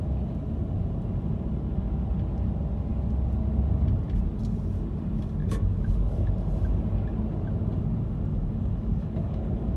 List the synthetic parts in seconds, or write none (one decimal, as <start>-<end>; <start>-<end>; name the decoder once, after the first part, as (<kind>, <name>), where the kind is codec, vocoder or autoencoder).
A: 5.4-6.3 (codec, DAC); 8.3-9.8